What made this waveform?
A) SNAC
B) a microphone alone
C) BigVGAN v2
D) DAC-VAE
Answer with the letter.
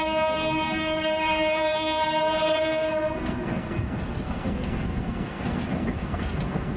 A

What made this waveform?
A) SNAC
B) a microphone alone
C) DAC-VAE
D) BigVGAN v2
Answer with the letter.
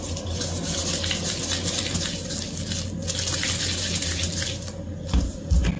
B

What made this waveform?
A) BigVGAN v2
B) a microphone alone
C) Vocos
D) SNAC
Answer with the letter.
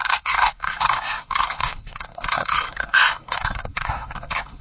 D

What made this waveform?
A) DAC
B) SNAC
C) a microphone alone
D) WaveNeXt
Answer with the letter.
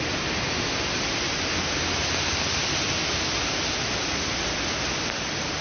C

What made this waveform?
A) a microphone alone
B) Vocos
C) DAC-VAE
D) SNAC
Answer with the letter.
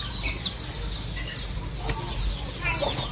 A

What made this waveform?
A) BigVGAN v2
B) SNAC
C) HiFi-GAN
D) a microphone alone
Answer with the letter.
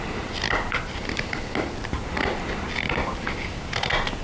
D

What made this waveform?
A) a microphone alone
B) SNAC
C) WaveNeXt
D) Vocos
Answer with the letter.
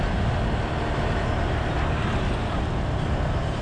A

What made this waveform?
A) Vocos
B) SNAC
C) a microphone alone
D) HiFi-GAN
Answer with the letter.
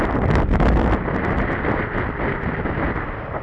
C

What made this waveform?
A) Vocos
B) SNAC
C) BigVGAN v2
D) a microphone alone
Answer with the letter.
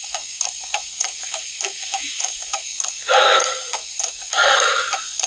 B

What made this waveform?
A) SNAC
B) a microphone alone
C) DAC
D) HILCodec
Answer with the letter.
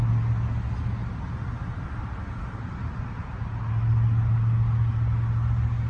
B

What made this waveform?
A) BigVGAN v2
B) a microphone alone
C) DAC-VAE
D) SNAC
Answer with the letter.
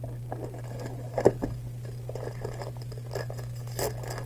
B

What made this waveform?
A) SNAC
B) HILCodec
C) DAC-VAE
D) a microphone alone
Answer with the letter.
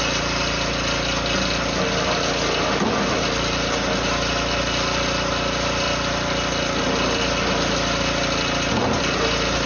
D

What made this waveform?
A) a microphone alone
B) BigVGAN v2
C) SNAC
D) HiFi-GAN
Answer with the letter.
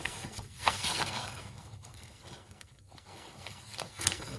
C